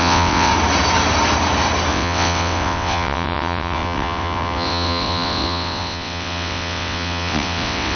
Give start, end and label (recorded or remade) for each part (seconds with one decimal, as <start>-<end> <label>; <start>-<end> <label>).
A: 0.0-0.5 remade; 0.5-1.9 recorded; 1.9-8.0 remade